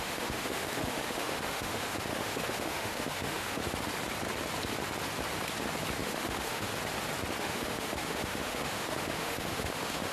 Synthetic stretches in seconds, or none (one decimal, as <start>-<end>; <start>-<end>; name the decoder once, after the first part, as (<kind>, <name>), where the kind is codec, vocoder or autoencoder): 0.0-3.6 (autoencoder, DAC-VAE); 6.0-6.7; 7.4-10.1